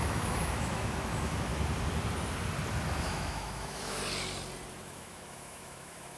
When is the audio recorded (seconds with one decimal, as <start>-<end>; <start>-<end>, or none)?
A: 1.5-3.0; 4.0-4.7